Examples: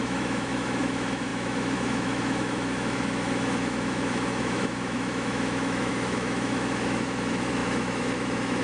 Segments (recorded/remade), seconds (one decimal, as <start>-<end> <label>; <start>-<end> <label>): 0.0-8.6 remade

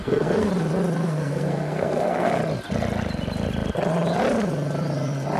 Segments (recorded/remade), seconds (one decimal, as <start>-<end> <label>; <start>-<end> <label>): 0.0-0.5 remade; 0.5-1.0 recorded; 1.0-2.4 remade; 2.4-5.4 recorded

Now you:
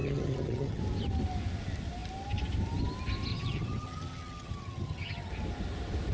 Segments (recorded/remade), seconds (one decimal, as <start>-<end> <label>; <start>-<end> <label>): 0.0-0.8 remade; 0.8-3.3 recorded; 3.3-5.3 remade; 5.3-6.1 recorded

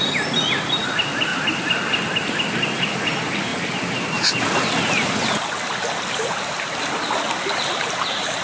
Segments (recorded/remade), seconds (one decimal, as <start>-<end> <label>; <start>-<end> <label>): 0.0-8.4 recorded

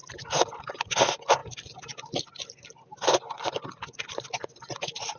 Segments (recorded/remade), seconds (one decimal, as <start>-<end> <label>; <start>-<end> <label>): 0.0-5.2 recorded

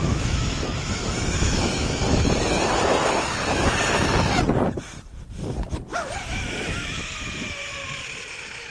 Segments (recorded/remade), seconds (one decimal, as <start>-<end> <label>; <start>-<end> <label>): 0.0-2.0 remade; 2.0-6.2 recorded; 6.2-7.8 remade; 7.8-8.7 recorded

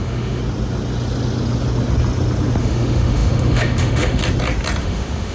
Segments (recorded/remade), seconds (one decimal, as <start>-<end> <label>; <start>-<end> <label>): 0.0-0.4 remade; 0.4-2.6 recorded; 2.6-4.2 remade; 4.2-4.8 recorded; 4.8-5.3 remade

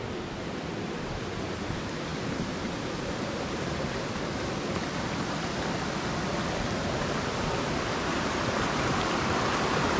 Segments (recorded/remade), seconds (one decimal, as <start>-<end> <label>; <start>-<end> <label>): 0.0-10.0 recorded